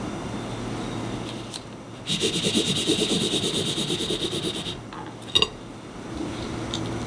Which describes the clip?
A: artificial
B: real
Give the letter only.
B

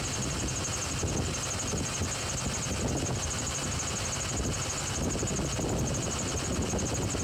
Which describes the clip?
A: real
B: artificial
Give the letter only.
A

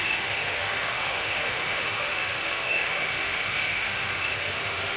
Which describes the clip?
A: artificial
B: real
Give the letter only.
A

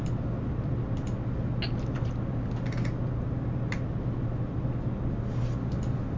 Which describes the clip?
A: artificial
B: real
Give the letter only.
B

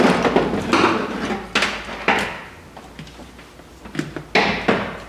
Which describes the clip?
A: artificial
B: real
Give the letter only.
B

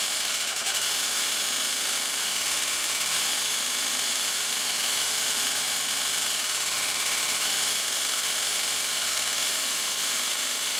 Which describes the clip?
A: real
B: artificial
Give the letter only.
B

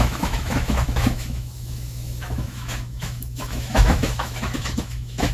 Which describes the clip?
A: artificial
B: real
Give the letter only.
A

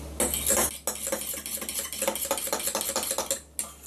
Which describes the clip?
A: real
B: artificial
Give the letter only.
A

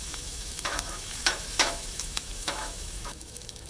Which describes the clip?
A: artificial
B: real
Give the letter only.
A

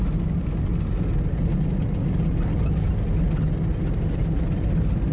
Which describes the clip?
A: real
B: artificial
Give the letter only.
A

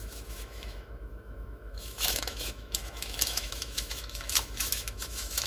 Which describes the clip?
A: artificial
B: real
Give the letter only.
A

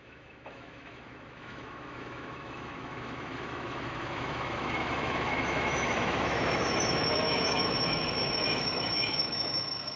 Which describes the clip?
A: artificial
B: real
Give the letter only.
A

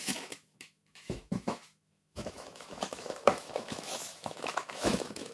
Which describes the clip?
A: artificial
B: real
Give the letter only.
A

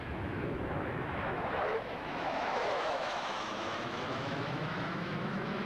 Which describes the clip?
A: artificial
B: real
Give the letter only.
A